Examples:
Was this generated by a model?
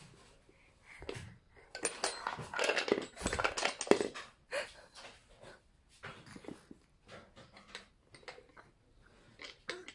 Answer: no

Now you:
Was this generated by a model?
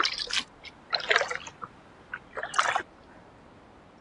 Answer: no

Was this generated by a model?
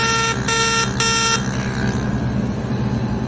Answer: no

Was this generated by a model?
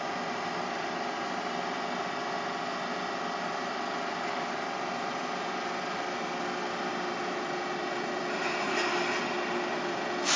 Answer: no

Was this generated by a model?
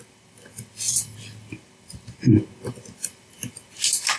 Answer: no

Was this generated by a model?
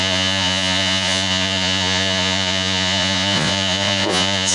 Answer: yes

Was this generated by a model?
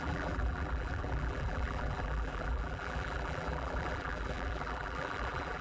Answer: yes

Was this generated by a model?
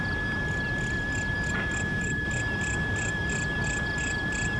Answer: no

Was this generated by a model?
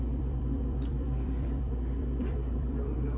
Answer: yes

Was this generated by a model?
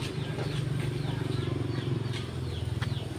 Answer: no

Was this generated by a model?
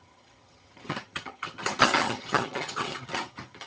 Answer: yes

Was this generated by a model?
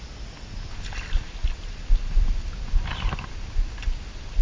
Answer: no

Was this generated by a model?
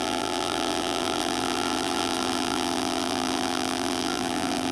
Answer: yes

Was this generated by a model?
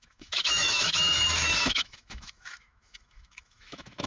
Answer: yes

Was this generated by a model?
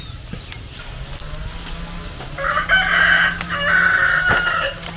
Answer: no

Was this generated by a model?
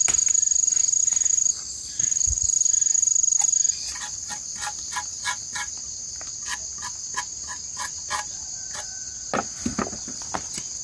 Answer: no